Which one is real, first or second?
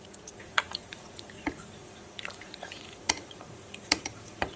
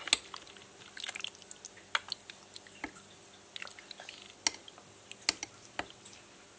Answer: second